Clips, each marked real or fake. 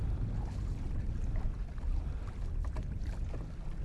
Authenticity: real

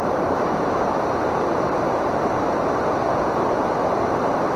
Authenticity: fake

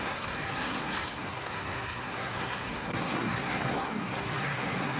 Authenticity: fake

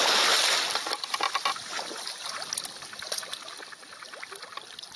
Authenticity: real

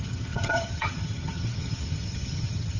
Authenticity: fake